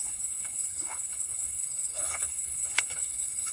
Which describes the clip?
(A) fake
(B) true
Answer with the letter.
A